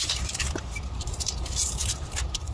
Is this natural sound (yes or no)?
no